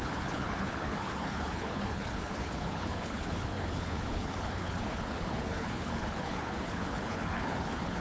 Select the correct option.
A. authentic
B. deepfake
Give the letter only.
B